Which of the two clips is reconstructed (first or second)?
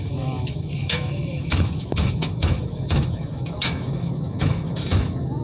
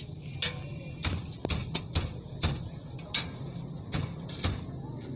first